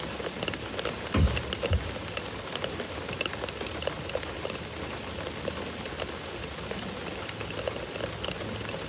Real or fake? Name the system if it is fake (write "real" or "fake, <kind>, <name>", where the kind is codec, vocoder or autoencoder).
real